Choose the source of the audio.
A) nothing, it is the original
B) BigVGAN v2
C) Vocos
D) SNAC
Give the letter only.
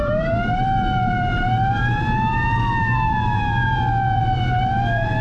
B